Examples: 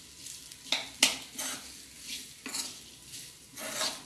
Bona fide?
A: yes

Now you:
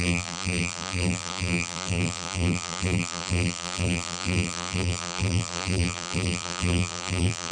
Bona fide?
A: no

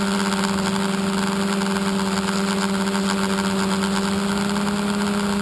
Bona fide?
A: yes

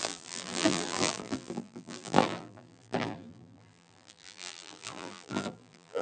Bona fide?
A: no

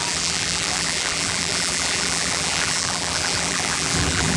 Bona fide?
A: no